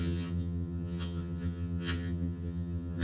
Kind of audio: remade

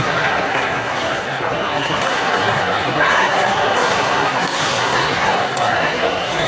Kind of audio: remade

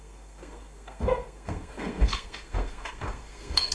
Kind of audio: remade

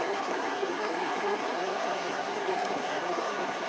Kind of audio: remade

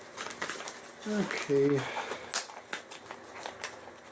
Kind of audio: recorded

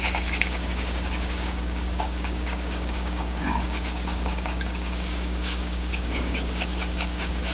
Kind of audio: remade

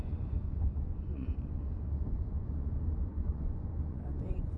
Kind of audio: remade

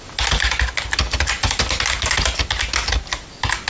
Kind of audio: recorded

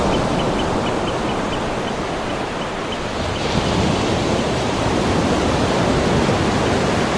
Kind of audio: recorded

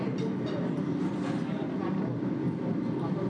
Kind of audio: remade